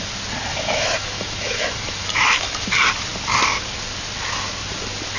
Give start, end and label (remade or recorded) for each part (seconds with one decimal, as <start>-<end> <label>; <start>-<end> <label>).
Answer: 0.0-0.5 recorded; 0.5-2.7 remade; 2.7-5.2 recorded